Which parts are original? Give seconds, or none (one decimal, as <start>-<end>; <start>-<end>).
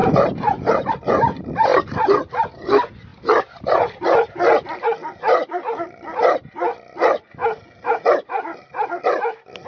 0.9-9.7